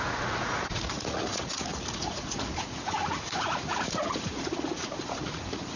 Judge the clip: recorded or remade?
remade